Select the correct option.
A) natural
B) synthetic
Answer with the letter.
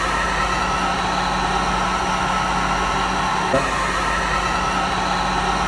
A